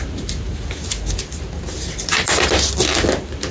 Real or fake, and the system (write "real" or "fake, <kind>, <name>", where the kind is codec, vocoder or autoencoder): real